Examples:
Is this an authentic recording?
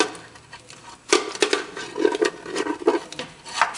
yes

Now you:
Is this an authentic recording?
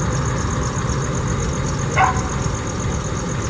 yes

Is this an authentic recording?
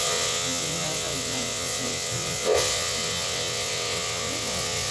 no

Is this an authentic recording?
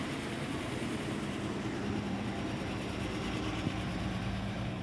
no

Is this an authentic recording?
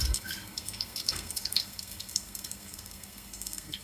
no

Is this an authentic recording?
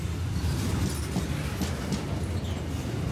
yes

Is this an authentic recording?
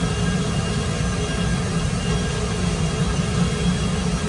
yes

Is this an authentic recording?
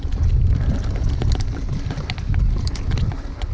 yes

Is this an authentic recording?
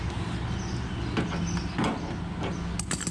yes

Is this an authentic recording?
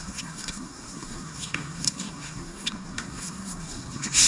no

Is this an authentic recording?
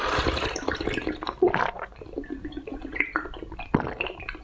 no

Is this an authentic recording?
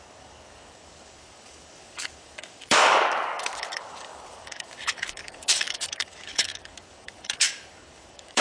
no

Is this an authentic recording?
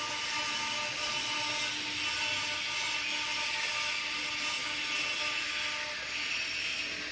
yes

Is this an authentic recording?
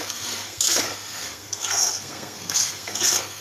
no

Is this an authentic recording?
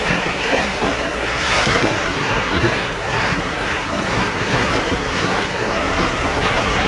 no